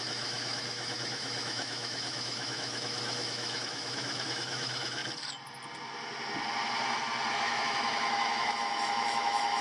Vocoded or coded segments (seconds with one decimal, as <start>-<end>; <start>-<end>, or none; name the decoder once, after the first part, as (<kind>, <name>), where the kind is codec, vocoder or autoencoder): 0.0-5.0 (autoencoder, DAC-VAE); 7.3-9.6

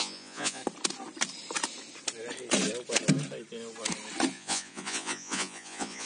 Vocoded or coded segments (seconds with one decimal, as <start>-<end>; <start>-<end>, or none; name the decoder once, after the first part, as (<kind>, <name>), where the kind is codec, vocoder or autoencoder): 0.0-0.6 (vocoder, Vocos); 4.3-6.1

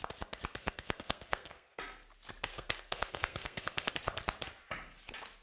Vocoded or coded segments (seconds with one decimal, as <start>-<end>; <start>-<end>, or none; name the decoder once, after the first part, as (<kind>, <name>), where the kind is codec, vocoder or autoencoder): 0.6-1.8 (codec, SNAC); 2.5-3.9

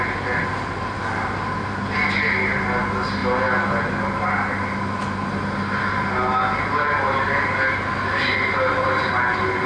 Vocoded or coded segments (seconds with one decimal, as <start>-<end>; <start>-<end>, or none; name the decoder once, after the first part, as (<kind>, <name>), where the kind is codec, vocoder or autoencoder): none

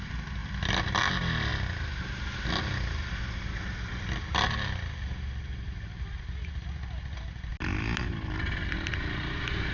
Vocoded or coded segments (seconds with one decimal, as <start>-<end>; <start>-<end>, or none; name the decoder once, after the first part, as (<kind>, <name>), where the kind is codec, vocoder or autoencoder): none

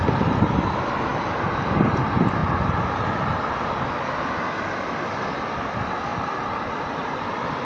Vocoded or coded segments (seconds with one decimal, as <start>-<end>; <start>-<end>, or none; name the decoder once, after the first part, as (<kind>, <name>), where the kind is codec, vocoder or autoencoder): none

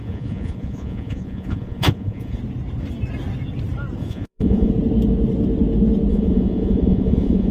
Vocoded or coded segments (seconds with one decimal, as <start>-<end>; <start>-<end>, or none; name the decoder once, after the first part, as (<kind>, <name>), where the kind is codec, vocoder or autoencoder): 0.0-2.4 (vocoder, Vocos); 4.0-4.7; 6.1-7.5

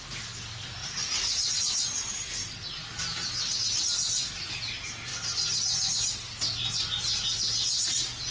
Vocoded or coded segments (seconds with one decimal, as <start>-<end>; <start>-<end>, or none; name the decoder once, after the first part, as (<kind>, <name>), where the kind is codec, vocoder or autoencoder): 0.8-1.6 (vocoder, Vocos)